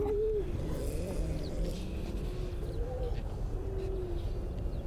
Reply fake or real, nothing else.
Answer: real